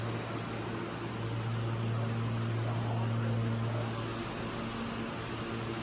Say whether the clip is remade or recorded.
recorded